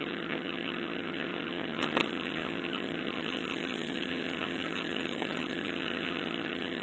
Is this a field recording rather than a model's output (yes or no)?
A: no